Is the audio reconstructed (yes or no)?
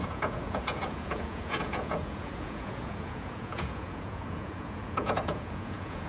yes